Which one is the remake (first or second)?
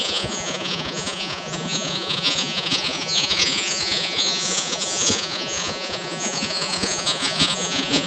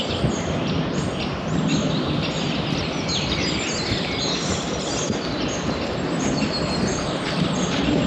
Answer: first